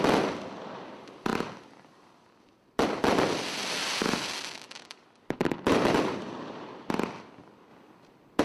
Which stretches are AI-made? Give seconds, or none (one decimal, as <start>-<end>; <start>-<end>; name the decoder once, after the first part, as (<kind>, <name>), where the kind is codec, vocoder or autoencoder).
none